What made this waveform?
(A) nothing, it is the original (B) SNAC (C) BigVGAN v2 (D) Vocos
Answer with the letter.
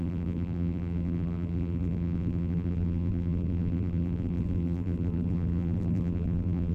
C